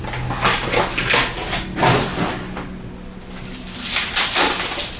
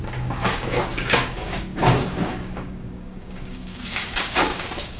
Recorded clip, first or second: first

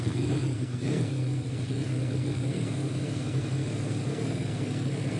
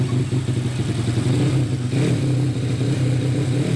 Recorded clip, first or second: second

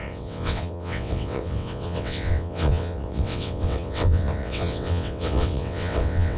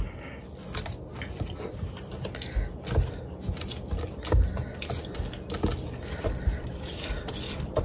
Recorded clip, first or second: second